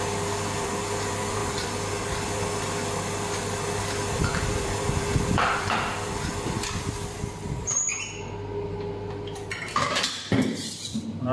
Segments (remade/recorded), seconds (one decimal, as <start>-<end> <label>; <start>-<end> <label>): 0.0-11.3 remade